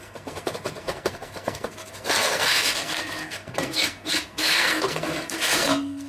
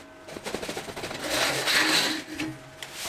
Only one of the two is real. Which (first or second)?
second